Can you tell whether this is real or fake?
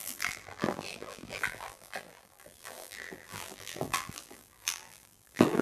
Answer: fake